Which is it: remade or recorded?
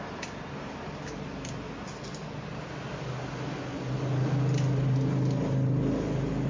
recorded